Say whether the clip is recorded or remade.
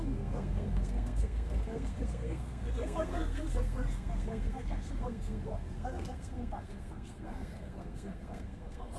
remade